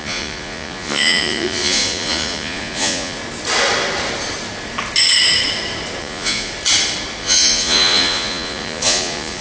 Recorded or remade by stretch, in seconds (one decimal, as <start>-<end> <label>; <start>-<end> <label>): 0.0-3.2 remade; 3.2-6.0 recorded; 6.0-6.5 remade; 6.5-7.2 recorded; 7.2-9.4 remade